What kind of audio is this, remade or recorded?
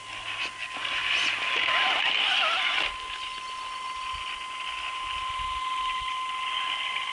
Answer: recorded